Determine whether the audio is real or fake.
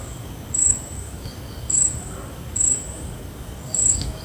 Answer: fake